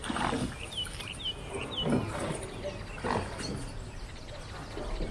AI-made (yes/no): no